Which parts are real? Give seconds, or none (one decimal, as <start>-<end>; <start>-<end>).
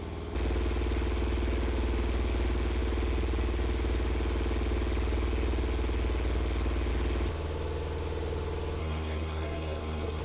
0.0-8.8